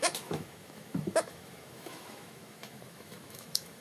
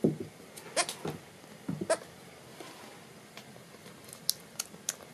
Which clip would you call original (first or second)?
second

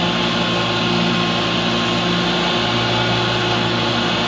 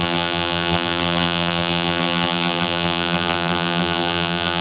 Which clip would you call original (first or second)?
first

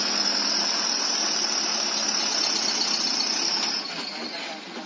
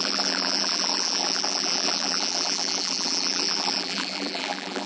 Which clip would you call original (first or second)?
first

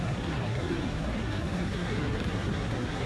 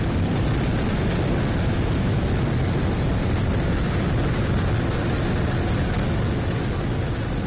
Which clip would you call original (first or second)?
second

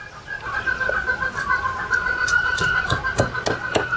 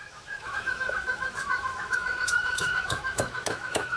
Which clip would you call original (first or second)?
first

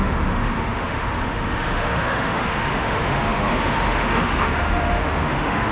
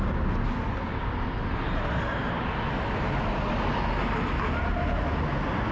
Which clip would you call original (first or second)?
second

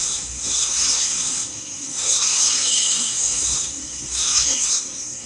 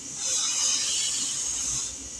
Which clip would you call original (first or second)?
second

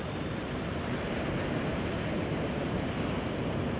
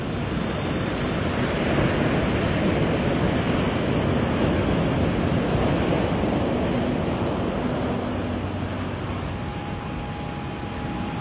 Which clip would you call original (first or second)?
second